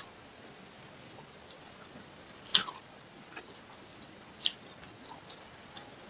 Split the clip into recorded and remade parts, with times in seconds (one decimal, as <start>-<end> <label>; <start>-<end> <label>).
0.0-6.1 recorded